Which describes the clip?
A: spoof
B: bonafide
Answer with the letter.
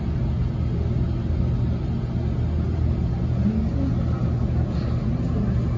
B